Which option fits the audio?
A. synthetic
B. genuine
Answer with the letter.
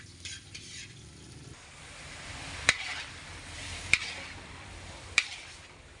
A